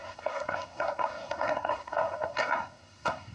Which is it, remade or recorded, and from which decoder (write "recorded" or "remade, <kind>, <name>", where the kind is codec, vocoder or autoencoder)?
remade, codec, SNAC